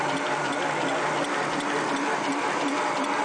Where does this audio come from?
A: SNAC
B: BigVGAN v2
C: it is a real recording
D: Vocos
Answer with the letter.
B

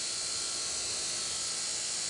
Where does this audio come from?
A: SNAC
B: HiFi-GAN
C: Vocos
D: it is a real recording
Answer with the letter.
D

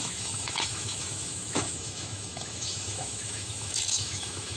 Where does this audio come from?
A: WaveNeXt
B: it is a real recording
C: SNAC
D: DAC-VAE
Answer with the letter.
D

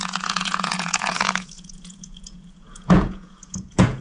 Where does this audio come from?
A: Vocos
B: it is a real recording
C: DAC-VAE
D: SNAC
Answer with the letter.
A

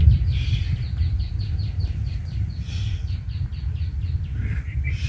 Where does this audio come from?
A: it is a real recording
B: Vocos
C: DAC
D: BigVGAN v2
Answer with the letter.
D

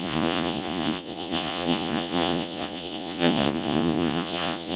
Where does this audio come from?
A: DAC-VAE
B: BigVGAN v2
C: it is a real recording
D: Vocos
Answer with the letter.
D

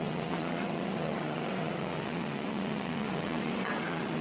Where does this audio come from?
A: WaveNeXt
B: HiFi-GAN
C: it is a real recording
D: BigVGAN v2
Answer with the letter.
A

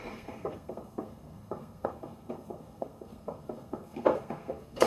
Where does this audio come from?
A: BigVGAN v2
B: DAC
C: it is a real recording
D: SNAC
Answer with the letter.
D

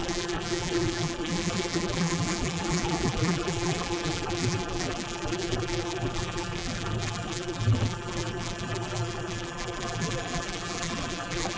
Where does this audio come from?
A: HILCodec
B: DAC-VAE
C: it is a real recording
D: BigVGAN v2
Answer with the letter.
D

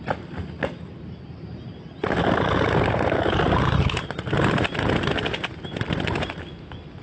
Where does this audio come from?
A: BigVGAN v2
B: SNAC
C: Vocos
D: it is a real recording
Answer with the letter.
D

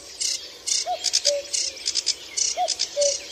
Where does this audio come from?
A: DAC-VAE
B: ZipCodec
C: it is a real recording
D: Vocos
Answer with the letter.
C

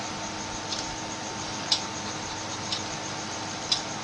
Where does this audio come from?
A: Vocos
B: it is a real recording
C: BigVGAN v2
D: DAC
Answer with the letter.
C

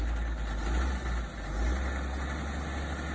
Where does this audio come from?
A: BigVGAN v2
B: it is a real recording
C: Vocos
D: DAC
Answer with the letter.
B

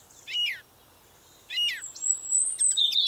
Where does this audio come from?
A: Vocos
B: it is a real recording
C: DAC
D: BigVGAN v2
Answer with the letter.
B